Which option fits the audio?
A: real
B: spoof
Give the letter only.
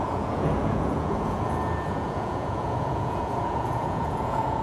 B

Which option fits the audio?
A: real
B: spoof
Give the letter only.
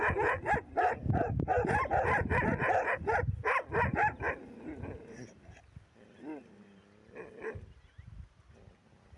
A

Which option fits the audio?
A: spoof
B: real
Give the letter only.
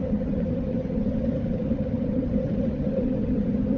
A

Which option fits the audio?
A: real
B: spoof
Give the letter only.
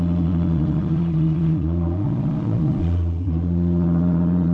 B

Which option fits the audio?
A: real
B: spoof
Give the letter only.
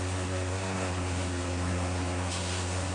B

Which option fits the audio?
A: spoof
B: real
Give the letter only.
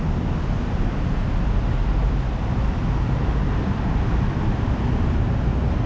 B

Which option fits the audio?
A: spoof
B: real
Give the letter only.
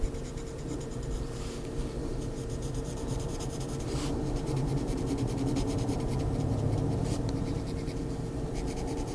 A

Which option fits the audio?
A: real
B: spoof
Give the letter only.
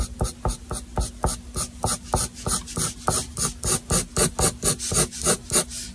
A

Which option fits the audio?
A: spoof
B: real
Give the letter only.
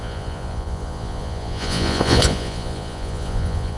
A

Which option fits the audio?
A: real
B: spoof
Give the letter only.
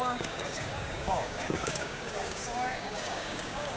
B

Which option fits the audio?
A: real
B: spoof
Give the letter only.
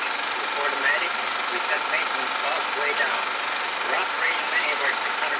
A